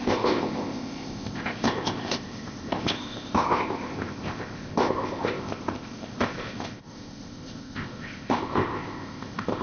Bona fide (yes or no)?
no